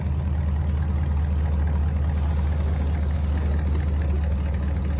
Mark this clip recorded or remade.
recorded